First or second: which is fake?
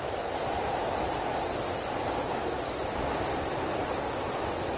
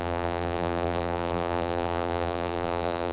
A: second